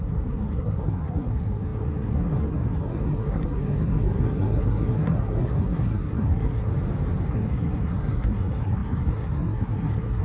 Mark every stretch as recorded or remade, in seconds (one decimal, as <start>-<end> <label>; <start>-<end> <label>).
0.0-6.7 remade; 6.7-7.3 recorded; 7.3-10.2 remade